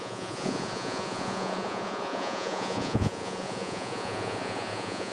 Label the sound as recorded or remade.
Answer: remade